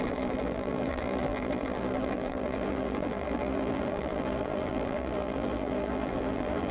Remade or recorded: remade